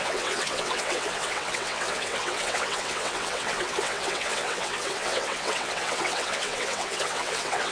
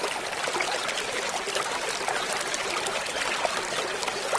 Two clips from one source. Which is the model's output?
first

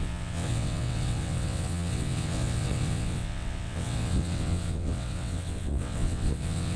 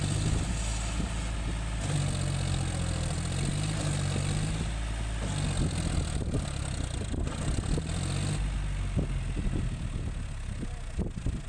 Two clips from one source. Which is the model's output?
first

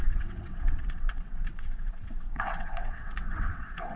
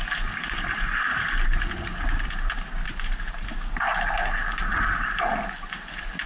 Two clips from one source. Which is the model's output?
first